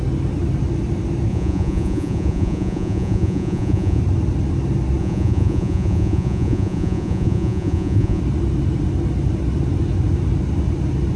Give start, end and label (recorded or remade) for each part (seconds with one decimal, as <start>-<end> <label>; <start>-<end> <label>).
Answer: 0.0-1.3 recorded; 1.3-4.0 remade; 4.0-5.0 recorded; 5.0-8.2 remade; 8.2-11.2 recorded